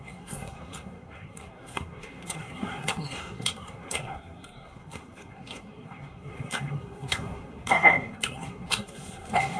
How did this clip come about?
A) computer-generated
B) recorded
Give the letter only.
A